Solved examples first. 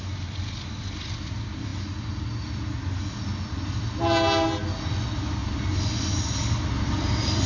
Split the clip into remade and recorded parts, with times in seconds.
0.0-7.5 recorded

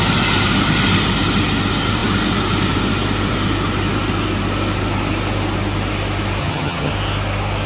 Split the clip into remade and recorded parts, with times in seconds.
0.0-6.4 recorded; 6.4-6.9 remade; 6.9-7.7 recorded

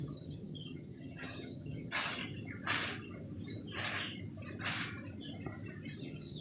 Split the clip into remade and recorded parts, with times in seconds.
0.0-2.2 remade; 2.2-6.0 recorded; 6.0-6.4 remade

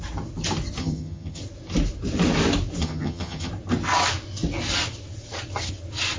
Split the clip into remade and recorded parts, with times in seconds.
0.0-0.8 recorded; 0.8-1.4 remade; 1.4-2.8 recorded; 2.8-3.5 remade; 3.5-6.2 recorded

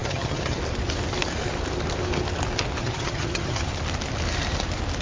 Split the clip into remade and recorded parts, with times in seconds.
0.0-0.6 remade; 0.6-2.8 recorded; 2.8-3.7 remade; 3.7-5.0 recorded

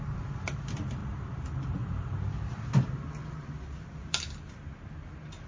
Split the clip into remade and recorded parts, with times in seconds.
0.0-5.5 recorded

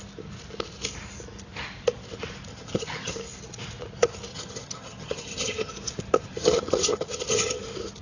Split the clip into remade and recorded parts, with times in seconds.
0.0-2.5 recorded; 2.5-3.1 remade; 3.1-4.3 recorded; 4.3-5.7 remade; 5.7-6.3 recorded; 6.3-7.6 remade; 7.6-8.0 recorded

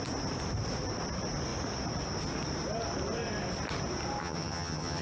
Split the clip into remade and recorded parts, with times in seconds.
0.0-4.2 recorded; 4.2-5.0 remade